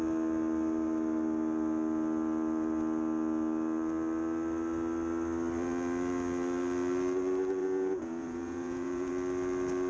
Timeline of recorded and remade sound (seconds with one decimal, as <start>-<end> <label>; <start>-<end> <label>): 0.0-7.6 recorded; 7.6-9.1 remade; 9.1-9.9 recorded